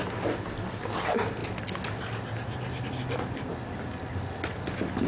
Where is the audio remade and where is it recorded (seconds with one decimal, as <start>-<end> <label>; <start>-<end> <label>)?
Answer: 0.0-5.1 recorded